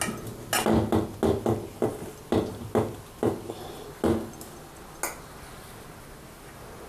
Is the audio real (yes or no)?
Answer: yes